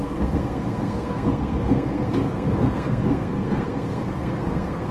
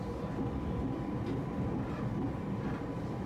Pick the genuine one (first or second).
second